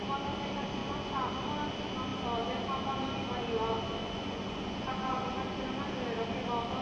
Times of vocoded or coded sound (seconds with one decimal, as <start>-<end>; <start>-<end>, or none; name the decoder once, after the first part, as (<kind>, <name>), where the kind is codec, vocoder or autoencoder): 0.8-1.3 (vocoder, Vocos); 4.0-5.6